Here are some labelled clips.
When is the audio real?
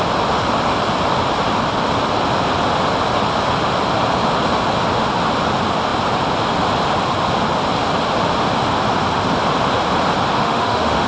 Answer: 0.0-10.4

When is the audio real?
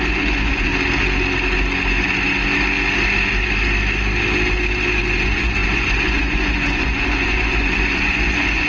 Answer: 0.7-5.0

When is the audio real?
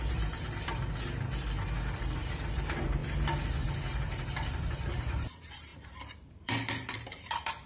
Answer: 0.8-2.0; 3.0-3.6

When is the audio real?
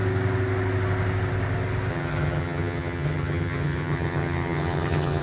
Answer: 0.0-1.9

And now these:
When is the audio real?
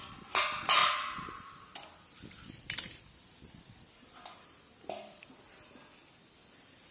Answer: 0.0-6.9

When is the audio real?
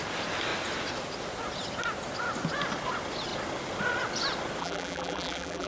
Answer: 0.0-4.6